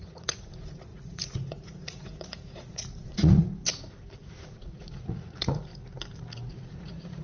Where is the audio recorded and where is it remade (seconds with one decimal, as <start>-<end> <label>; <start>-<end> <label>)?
0.0-3.6 remade; 3.6-4.2 recorded; 4.2-5.7 remade; 5.7-6.5 recorded; 6.5-7.2 remade